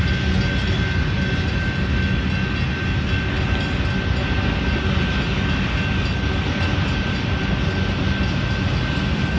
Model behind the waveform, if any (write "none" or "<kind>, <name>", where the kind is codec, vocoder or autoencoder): none